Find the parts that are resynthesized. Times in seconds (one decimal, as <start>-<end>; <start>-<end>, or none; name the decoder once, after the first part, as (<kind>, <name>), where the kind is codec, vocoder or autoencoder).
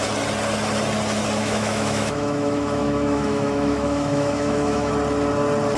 1.4-4.9 (autoencoder, DAC-VAE)